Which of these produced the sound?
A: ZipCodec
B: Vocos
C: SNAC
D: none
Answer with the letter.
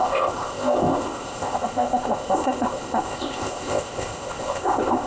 A